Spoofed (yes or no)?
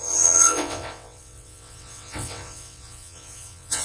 yes